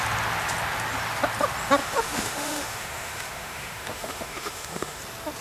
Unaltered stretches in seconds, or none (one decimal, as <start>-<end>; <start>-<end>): 0.0-1.8; 5.0-5.4